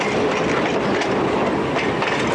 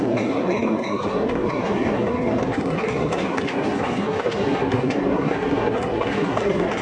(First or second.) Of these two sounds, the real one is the first